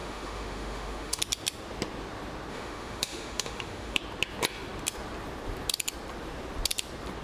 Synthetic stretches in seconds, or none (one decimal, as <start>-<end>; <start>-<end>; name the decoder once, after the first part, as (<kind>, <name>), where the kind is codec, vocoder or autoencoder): 0.0-1.2 (autoencoder, DAC-VAE); 2.5-4.0